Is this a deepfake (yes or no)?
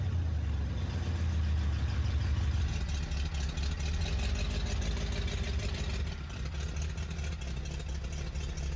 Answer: no